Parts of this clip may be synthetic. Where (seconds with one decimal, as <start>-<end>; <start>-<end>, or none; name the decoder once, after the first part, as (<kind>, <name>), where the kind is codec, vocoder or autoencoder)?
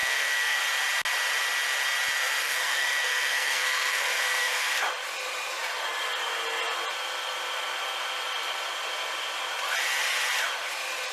0.0-0.6 (codec, SNAC); 2.4-4.7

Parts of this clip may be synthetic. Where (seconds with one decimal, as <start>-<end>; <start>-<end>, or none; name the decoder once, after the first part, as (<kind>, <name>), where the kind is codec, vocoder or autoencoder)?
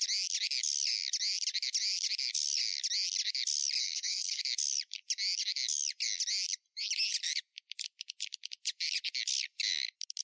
3.8-4.4 (codec, SNAC)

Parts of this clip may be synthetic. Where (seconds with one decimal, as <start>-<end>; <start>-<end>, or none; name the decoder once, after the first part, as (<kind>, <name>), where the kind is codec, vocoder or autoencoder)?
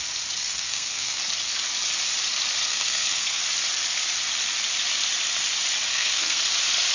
0.4-1.2 (codec, SNAC); 2.6-3.4; 5.9-6.4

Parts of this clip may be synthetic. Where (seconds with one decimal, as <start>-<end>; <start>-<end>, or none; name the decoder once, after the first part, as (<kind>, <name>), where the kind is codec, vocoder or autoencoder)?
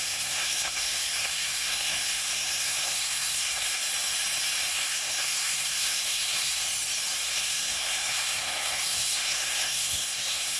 0.0-3.8 (codec, SNAC); 4.7-6.6; 7.2-10.6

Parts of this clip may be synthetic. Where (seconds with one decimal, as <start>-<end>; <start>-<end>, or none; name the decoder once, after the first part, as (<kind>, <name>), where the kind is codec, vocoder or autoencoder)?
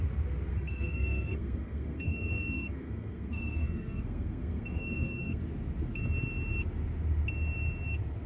0.5-5.4 (codec, SNAC)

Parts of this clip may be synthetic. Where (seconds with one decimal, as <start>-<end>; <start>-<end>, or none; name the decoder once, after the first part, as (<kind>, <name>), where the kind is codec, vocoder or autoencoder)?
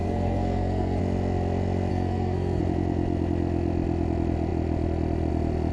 0.0-1.0 (codec, SNAC); 1.9-2.6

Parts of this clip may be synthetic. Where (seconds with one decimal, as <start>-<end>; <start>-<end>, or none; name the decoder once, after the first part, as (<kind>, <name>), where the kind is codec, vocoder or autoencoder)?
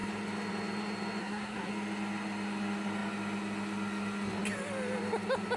1.2-1.7 (codec, SNAC)